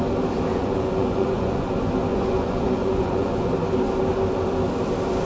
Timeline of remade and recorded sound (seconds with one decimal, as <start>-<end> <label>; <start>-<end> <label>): 0.0-0.5 recorded; 0.5-1.7 remade; 1.7-2.1 recorded; 2.1-3.5 remade; 3.5-5.3 recorded